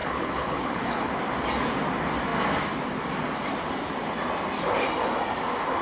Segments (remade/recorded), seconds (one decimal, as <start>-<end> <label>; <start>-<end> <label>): 0.0-1.1 remade; 1.1-5.8 recorded